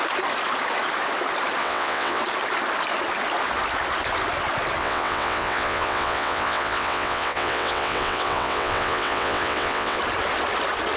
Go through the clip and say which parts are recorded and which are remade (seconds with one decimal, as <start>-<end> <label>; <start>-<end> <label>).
0.0-1.6 recorded; 1.6-2.2 remade; 2.2-4.8 recorded; 4.8-10.0 remade; 10.0-11.0 recorded